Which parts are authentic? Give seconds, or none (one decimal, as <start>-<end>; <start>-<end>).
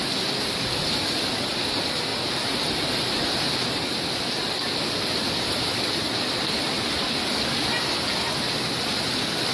0.0-9.5